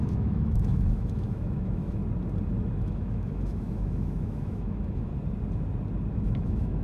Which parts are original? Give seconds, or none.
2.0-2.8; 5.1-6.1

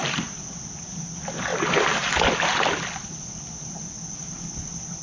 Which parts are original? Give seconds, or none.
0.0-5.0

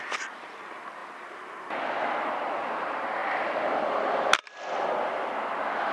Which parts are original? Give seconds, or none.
0.0-5.9

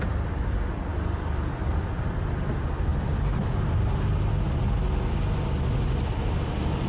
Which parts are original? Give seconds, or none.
0.0-6.9

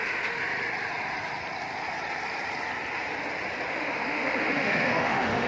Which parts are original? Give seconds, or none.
0.4-3.7

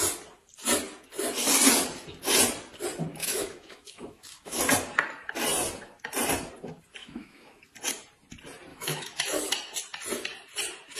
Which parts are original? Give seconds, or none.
0.0-3.2; 4.6-7.0; 7.6-8.7; 9.5-11.0

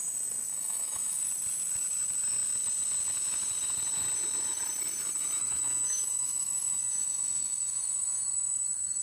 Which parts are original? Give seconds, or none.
0.0-0.5; 1.3-5.4